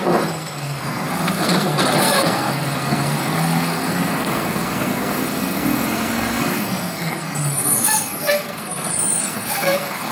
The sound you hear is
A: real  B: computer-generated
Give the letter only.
B